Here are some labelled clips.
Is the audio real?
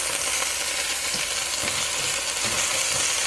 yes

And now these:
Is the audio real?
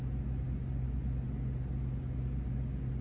yes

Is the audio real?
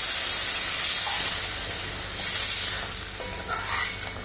yes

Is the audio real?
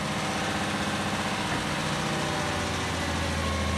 yes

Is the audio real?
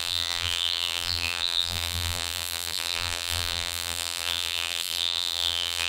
no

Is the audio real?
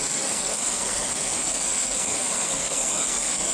no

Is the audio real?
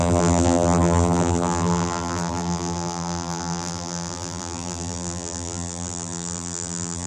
no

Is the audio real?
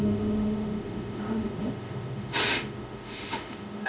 no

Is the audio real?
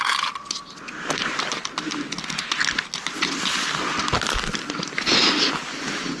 yes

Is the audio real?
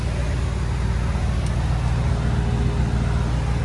yes